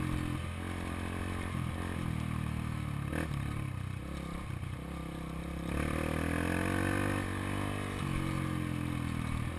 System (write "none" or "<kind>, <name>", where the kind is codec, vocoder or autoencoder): none